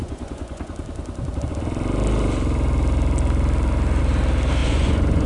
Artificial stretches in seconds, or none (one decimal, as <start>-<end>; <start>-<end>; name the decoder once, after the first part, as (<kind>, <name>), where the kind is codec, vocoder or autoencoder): 0.0-0.7 (vocoder, Vocos); 4.6-5.3